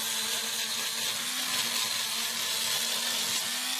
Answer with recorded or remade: recorded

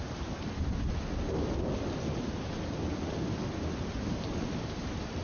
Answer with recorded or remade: recorded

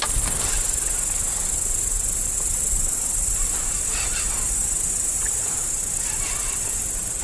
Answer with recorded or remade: recorded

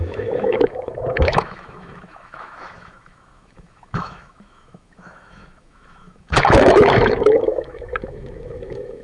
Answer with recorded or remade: remade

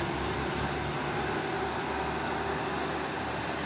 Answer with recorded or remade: recorded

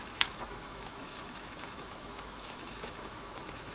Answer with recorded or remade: remade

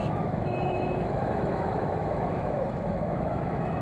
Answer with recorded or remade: remade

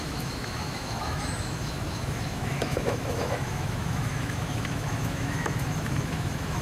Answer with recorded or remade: remade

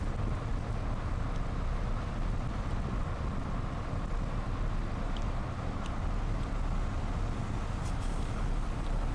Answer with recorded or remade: recorded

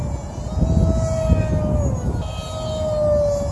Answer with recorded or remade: recorded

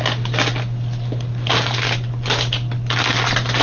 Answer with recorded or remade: recorded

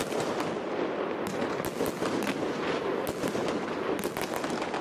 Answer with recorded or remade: recorded